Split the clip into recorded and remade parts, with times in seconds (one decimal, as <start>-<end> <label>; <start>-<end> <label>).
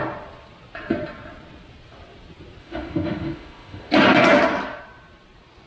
0.0-2.6 recorded; 2.6-3.9 remade; 3.9-5.7 recorded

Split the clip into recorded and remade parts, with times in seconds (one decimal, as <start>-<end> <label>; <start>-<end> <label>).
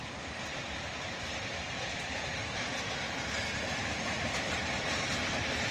0.0-2.7 remade; 2.7-3.8 recorded; 3.8-5.1 remade; 5.1-5.7 recorded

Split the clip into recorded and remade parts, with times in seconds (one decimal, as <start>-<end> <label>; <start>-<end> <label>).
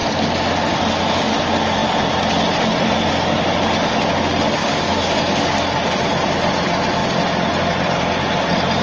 0.0-4.6 recorded; 4.6-5.5 remade; 5.5-8.8 recorded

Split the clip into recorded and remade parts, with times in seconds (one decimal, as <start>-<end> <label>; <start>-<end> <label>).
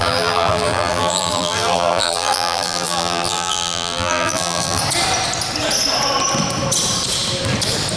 0.0-4.8 remade; 4.8-8.0 recorded